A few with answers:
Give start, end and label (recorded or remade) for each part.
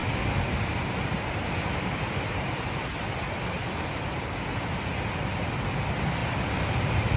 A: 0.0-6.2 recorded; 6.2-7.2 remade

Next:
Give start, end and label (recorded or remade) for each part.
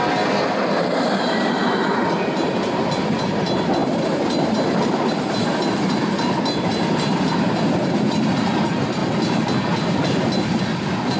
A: 0.0-1.6 remade; 1.6-3.0 recorded; 3.0-9.0 remade; 9.0-10.6 recorded; 10.6-11.2 remade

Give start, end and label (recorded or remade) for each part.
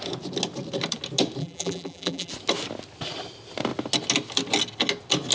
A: 0.0-1.4 recorded; 1.4-2.3 remade; 2.3-5.3 recorded